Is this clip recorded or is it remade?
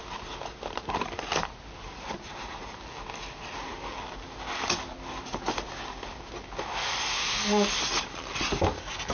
recorded